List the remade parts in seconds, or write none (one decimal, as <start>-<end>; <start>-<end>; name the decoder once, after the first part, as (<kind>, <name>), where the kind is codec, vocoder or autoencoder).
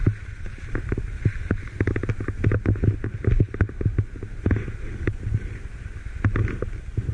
none